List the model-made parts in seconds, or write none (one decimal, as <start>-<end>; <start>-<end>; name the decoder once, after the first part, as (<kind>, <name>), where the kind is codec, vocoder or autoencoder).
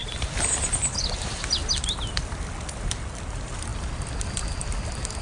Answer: 0.0-0.7 (vocoder, BigVGAN v2); 1.6-2.2; 3.7-4.5